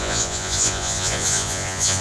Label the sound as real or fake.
fake